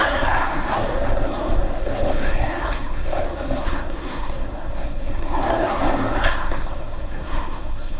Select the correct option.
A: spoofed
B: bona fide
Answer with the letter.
A